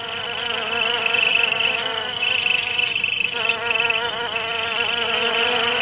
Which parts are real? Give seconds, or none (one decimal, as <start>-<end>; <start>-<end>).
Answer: 0.0-5.8